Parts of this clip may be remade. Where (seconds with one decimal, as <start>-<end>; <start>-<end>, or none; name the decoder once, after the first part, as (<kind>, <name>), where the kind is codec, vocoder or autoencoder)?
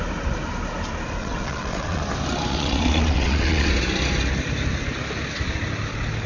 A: 1.2-2.0 (vocoder, WaveNeXt); 2.5-3.7